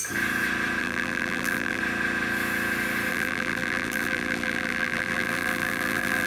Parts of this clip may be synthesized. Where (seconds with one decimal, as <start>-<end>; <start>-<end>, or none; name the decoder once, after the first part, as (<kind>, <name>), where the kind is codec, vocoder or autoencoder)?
0.8-1.8 (vocoder, BigVGAN v2); 3.1-6.3